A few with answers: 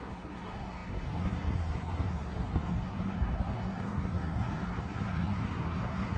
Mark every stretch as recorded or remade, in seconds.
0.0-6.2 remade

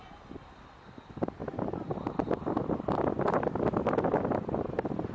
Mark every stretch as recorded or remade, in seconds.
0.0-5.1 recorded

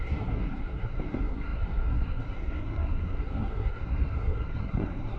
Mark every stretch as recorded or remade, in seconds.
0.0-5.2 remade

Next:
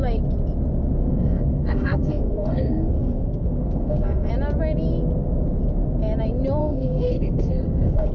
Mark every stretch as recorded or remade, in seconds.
0.0-1.0 recorded; 1.0-4.3 remade; 4.3-6.6 recorded; 6.6-8.1 remade